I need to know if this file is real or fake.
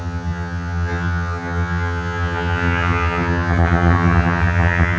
fake